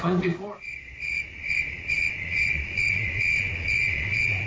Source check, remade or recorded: remade